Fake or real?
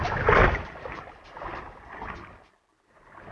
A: real